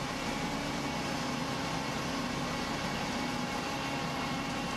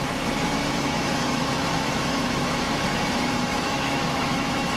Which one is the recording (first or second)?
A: first